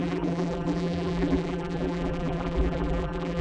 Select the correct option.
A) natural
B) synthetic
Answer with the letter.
B